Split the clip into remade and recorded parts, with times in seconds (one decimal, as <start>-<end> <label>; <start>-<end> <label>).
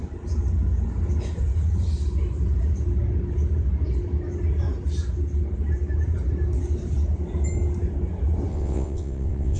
0.0-8.5 recorded; 8.5-9.6 remade